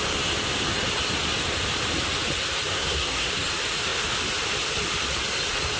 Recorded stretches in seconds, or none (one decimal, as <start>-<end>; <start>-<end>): 0.0-2.7; 3.3-5.8